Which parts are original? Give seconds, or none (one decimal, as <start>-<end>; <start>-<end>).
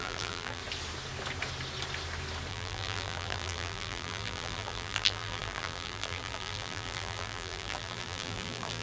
0.6-2.5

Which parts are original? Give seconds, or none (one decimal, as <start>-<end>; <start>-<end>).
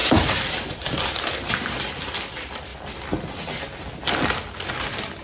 1.5-5.2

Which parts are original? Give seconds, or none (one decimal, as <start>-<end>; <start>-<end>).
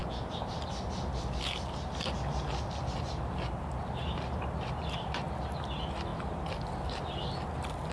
0.0-6.1; 6.7-7.9